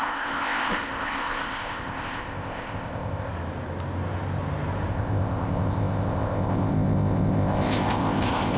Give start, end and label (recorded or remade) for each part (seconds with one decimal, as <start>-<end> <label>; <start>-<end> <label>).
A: 0.0-3.3 remade; 3.3-4.9 recorded; 4.9-8.6 remade